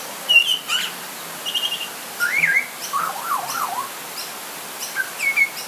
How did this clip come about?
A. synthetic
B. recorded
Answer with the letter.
B